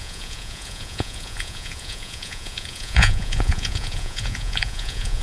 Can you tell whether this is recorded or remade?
remade